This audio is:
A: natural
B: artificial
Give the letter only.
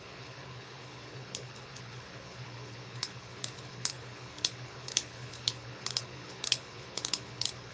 B